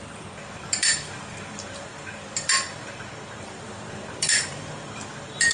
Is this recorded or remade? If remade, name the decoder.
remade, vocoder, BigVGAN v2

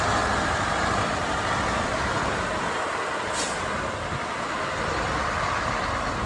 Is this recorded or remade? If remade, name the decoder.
recorded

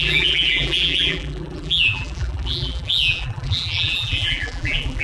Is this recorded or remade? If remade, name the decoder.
remade, vocoder, BigVGAN v2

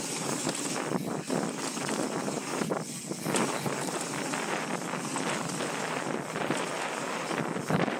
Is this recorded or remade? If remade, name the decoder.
recorded